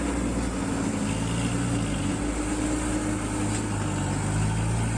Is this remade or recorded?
recorded